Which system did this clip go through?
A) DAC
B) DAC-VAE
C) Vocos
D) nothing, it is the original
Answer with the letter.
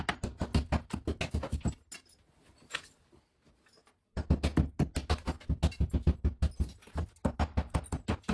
D